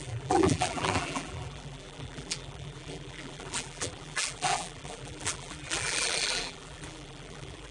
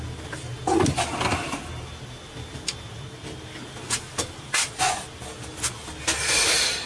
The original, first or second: second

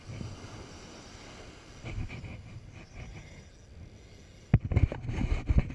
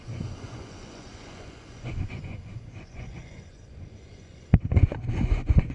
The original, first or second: first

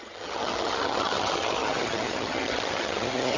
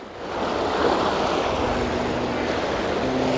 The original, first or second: second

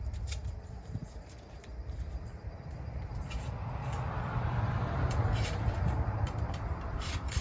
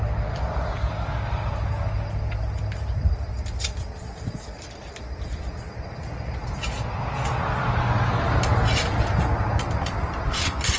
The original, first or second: second